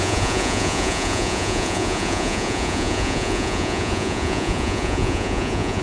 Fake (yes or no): yes